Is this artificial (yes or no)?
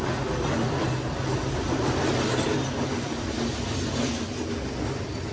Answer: no